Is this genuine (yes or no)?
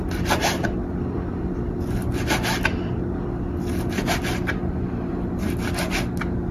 yes